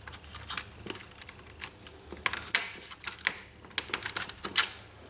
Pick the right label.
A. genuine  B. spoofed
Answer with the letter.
A